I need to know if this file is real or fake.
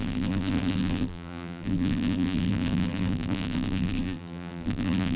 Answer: fake